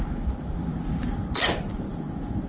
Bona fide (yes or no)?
yes